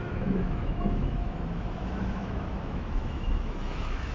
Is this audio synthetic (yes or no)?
yes